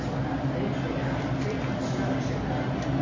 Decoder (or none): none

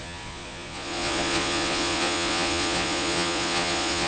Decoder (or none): vocoder, Vocos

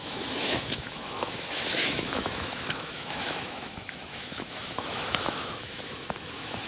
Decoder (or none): autoencoder, DAC-VAE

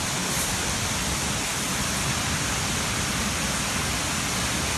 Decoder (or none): none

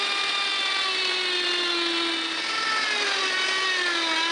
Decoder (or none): none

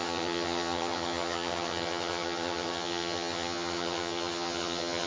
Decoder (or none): vocoder, HiFi-GAN